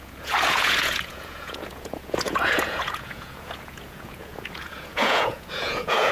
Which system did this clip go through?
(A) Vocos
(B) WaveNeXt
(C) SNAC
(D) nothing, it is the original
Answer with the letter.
A